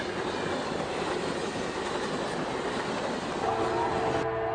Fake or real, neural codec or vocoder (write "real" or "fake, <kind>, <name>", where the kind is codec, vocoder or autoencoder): real